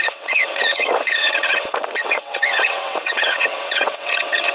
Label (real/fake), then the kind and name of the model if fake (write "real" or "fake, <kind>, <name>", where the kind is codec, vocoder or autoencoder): fake, vocoder, WaveNeXt